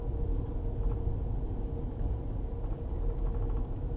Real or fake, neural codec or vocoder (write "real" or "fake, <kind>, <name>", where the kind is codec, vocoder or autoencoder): real